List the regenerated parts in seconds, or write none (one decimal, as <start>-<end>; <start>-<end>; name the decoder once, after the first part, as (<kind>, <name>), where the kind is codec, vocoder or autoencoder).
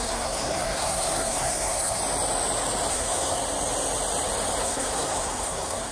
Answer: 0.0-2.0 (codec, SNAC); 2.9-3.4; 4.6-5.9